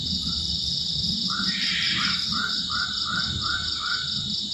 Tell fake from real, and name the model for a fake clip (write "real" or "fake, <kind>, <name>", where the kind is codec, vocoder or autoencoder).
fake, vocoder, BigVGAN v2